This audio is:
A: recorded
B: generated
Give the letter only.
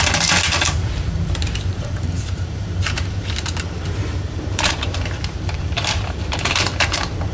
B